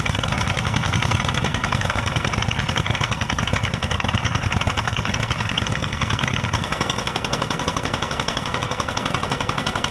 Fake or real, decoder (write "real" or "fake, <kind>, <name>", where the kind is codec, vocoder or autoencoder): fake, codec, SNAC